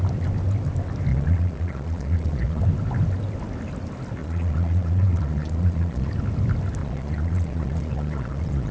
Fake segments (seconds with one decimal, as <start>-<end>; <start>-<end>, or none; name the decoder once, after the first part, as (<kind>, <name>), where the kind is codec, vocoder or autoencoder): 1.1-2.6 (vocoder, Vocos); 4.2-6.1; 6.8-8.7